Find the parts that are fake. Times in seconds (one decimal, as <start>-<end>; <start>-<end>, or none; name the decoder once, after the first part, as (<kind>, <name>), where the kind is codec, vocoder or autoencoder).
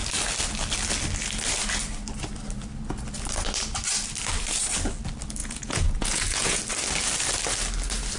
5.4-6.6 (vocoder, Vocos)